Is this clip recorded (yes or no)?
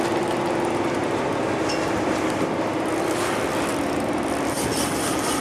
yes